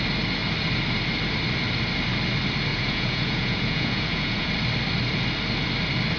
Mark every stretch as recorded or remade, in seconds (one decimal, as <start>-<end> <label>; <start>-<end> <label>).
0.0-2.7 recorded; 2.7-4.5 remade; 4.5-6.2 recorded